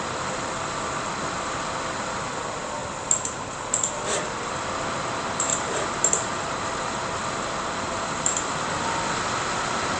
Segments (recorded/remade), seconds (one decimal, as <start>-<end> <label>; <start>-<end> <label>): 0.0-5.5 recorded; 5.5-6.1 remade; 6.1-10.0 recorded